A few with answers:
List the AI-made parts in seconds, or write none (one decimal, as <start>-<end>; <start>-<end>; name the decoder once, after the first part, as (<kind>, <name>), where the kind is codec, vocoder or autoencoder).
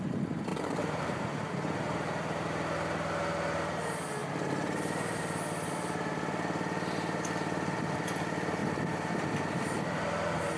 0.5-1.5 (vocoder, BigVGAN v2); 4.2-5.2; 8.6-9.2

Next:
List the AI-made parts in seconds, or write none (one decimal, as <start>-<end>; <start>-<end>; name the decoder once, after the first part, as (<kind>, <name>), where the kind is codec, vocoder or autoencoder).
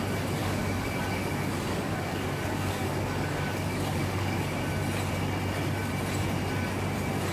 0.4-4.6 (codec, DAC)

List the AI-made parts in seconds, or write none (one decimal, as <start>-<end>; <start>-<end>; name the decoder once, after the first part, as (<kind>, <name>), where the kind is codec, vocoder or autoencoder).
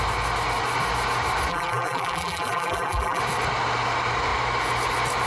1.5-3.2 (vocoder, BigVGAN v2)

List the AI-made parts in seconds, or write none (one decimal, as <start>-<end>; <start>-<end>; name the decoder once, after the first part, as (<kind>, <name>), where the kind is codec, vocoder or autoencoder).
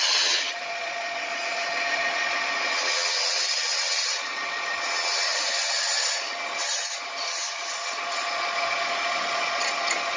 0.0-10.2 (vocoder, Vocos)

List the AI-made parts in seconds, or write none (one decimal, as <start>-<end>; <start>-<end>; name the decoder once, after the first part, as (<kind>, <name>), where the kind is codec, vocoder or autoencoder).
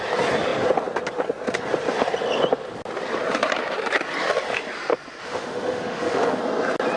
5.2-6.4 (autoencoder, DAC-VAE)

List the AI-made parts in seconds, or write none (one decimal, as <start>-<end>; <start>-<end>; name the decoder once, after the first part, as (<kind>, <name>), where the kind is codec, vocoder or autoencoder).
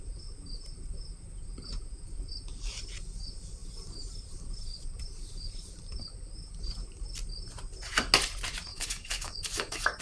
8.7-10.0 (codec, DAC)